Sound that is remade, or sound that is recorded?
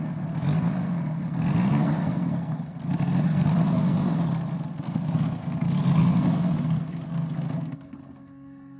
remade